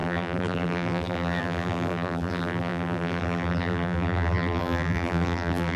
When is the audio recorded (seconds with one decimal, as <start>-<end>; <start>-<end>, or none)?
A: none